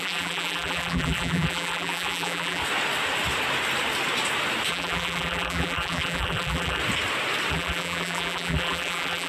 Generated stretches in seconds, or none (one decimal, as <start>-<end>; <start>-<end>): 0.0-2.6; 4.7-6.8; 7.5-9.3